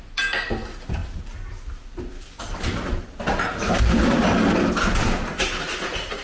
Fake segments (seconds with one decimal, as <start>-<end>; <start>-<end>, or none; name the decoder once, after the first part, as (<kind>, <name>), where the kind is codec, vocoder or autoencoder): none